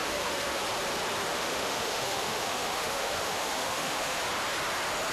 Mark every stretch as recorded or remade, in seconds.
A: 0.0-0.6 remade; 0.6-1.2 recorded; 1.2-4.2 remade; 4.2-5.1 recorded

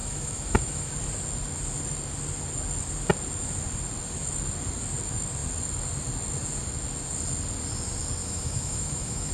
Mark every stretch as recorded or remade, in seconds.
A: 0.0-0.9 remade; 0.9-8.2 recorded; 8.2-9.3 remade

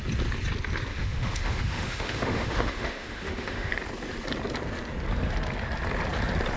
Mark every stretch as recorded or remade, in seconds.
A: 0.0-0.9 recorded; 0.9-3.7 remade; 3.7-6.6 recorded

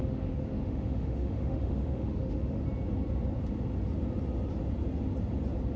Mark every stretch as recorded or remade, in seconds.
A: 0.0-2.6 remade; 2.6-5.8 recorded

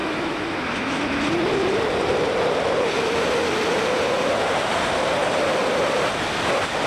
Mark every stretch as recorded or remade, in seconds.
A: 0.0-1.2 remade; 1.2-6.9 recorded

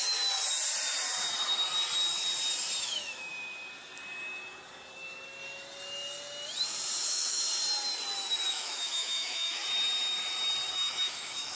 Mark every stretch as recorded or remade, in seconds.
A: 0.0-2.8 recorded; 2.8-3.3 remade; 3.3-7.0 recorded; 7.0-7.4 remade; 7.4-8.5 recorded; 8.5-9.6 remade; 9.6-10.7 recorded; 10.7-11.5 remade

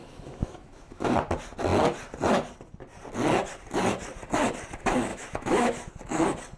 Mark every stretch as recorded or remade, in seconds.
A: 0.0-1.1 remade; 1.1-5.1 recorded; 5.1-5.9 remade; 5.9-6.6 recorded

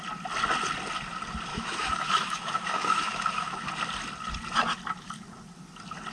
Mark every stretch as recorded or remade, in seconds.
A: 0.0-1.5 recorded; 1.5-3.7 remade; 3.7-6.1 recorded